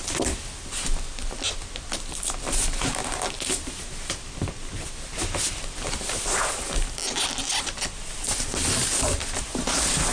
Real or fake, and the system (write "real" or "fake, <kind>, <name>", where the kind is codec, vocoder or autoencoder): real